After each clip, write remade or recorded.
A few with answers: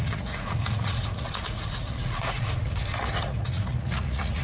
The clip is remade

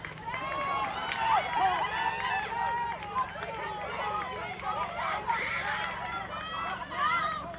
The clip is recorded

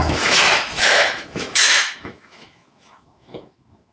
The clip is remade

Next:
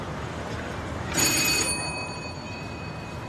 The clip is remade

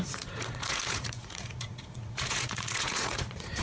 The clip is remade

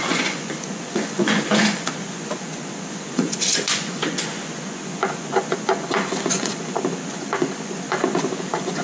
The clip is remade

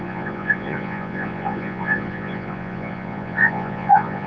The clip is remade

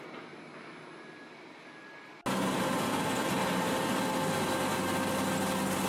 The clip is recorded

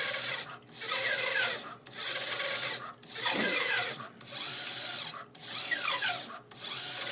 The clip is recorded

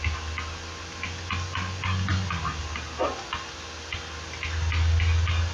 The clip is recorded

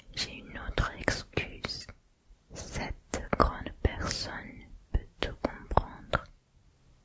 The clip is recorded